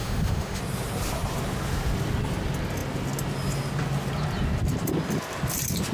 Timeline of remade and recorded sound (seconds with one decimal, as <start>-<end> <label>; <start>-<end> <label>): 0.0-0.6 remade; 0.6-5.9 recorded